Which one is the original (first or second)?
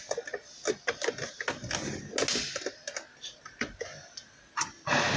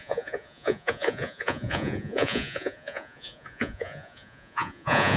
first